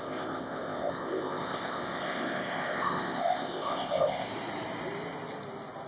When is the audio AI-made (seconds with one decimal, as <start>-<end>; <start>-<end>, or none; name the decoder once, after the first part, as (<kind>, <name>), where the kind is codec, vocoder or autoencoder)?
0.0-4.3 (codec, ZipCodec)